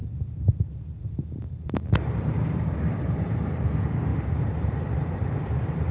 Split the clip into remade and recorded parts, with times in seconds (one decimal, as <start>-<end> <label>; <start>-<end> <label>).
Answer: 0.0-3.5 remade; 3.5-4.1 recorded; 4.1-5.9 remade